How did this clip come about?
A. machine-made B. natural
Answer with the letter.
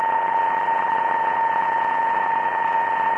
A